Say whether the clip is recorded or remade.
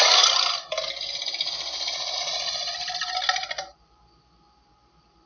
remade